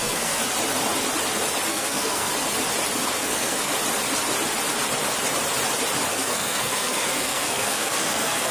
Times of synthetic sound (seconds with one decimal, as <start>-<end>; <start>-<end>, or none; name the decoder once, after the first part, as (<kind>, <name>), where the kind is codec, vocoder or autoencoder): 0.0-0.4 (codec, SNAC); 1.7-2.3; 3.2-3.7; 6.1-8.5